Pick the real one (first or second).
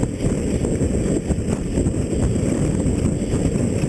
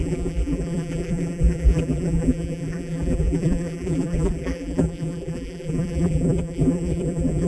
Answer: first